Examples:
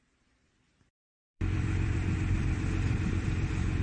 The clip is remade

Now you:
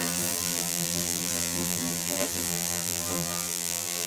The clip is remade